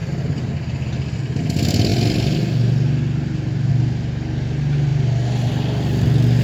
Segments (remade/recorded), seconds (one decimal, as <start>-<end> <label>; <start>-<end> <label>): 0.0-6.4 recorded

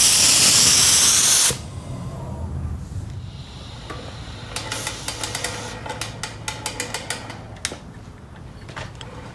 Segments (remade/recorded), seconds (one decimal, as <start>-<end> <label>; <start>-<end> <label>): 0.0-0.7 remade; 0.7-9.3 recorded

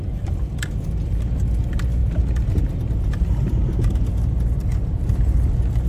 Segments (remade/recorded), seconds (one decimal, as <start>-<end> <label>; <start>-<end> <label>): 0.0-5.9 recorded

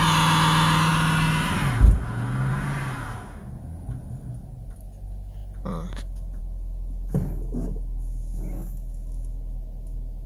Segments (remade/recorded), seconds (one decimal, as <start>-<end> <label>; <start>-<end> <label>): 0.0-10.3 recorded